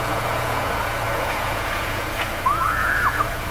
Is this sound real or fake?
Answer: fake